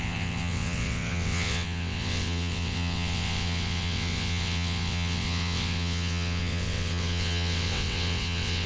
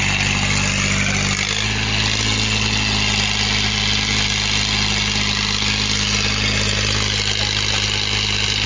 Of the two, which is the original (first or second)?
second